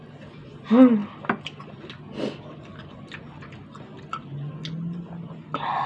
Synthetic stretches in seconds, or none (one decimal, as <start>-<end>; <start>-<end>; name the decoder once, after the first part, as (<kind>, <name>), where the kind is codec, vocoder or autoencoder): none